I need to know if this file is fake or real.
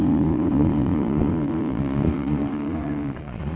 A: fake